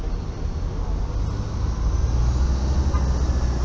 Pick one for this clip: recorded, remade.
recorded